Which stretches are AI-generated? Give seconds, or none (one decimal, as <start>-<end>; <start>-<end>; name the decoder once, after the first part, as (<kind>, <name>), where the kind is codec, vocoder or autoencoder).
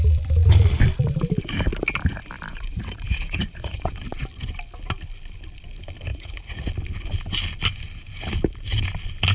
2.5-4.0 (vocoder, Vocos); 6.1-6.7